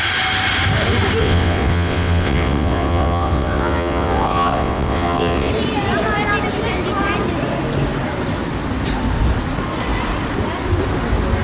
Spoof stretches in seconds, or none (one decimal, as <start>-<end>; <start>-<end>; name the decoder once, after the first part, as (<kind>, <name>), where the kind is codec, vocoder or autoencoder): 1.2-5.5 (vocoder, WaveNeXt)